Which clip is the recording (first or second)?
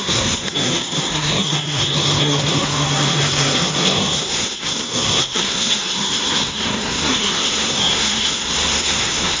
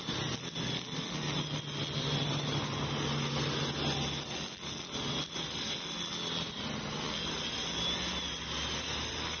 second